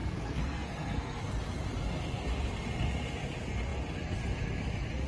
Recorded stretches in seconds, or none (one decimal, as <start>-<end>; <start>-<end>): 1.2-5.1